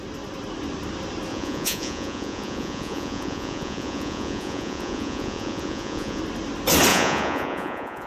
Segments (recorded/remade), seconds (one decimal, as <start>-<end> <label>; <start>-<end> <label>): 0.0-1.3 recorded; 1.3-6.2 remade; 6.2-6.9 recorded; 6.9-8.1 remade

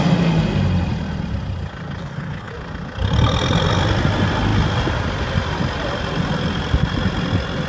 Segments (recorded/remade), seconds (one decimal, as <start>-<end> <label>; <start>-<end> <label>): 0.0-2.0 recorded; 2.0-2.5 remade; 2.5-7.7 recorded

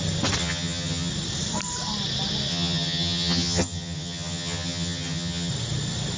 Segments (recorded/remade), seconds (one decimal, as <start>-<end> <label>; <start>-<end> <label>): 0.0-0.4 recorded; 0.4-1.1 remade; 1.1-2.5 recorded; 2.5-5.5 remade; 5.5-6.2 recorded

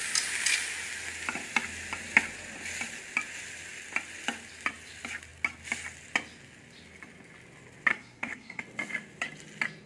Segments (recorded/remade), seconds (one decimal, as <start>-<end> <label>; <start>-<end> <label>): 0.0-7.9 recorded; 7.9-8.6 remade; 8.6-9.9 recorded